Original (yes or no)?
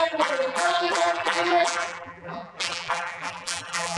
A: no